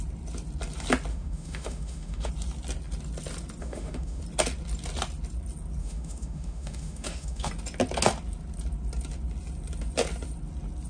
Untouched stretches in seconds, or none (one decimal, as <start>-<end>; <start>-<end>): 0.0-1.1; 2.3-3.6; 4.2-5.8; 7.5-10.9